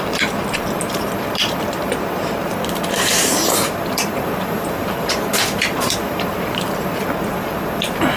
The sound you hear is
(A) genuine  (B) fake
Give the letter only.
B